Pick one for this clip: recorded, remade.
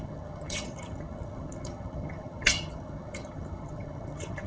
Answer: remade